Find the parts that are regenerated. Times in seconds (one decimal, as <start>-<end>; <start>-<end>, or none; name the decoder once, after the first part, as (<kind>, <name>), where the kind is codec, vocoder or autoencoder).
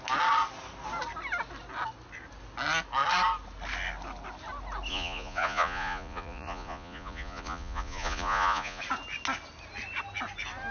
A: 4.9-8.8 (vocoder, Vocos)